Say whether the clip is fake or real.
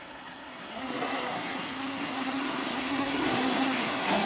fake